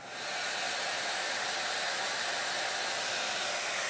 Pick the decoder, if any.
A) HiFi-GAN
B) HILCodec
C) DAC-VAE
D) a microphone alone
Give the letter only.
D